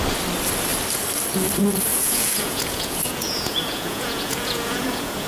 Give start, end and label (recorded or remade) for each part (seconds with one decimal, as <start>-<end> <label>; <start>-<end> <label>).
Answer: 0.0-1.9 recorded; 1.9-5.3 remade